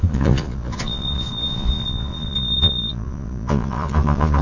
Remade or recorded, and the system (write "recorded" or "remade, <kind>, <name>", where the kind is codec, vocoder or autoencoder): remade, vocoder, Vocos